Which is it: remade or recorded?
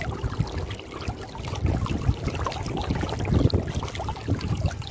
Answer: recorded